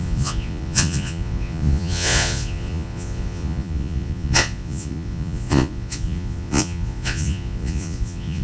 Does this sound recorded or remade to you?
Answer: remade